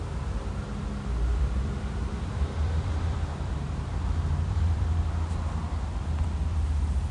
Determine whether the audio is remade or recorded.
remade